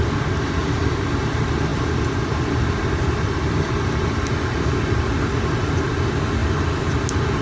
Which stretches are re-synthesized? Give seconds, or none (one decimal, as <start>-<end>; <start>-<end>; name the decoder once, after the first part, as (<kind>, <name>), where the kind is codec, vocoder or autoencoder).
0.6-1.2 (vocoder, BigVGAN v2); 1.7-5.9